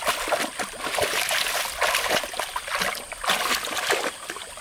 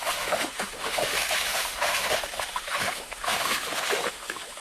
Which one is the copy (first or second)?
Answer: second